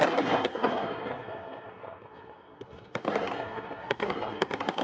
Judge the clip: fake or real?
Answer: fake